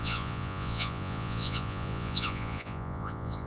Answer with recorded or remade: remade